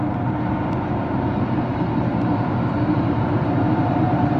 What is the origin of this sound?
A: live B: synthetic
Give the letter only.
B